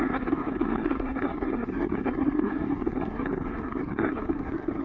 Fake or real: fake